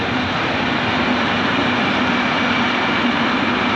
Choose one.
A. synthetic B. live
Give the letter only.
B